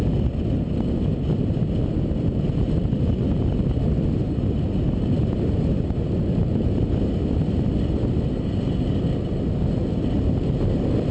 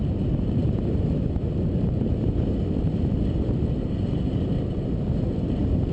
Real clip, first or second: first